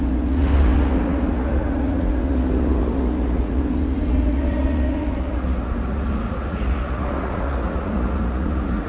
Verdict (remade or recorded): remade